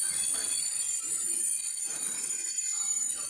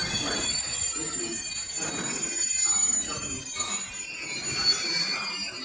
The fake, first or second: first